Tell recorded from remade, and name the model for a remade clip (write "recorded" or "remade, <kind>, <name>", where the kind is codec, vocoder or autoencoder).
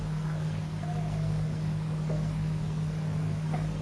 remade, codec, SNAC